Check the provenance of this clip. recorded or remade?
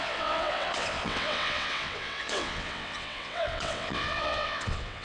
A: remade